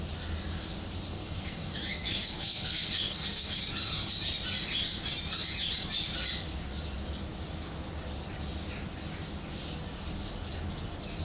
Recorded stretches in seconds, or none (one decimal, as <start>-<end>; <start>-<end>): 0.0-1.1; 3.6-11.2